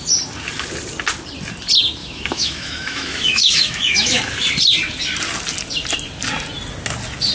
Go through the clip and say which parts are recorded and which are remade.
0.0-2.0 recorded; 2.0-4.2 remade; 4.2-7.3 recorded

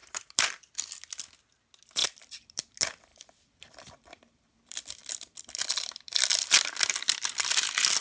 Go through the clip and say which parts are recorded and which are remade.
0.0-0.9 remade; 0.9-2.0 recorded; 2.0-2.6 remade; 2.6-3.1 recorded; 3.1-6.3 remade; 6.3-8.0 recorded